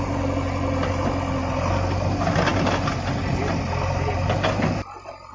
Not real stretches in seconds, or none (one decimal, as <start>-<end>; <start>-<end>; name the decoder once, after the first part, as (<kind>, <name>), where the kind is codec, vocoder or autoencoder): none